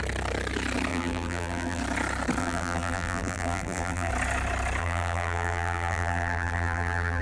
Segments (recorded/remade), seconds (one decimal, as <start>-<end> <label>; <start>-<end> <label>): 0.0-0.9 recorded; 0.9-1.8 remade; 1.8-2.4 recorded; 2.4-4.1 remade; 4.1-4.8 recorded; 4.8-7.2 remade